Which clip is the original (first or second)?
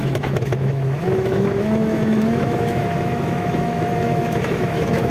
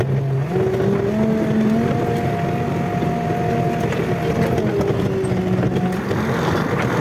second